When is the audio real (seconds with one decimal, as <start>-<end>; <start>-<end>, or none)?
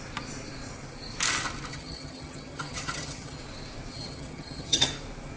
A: 0.0-1.7; 3.4-3.9; 4.9-5.4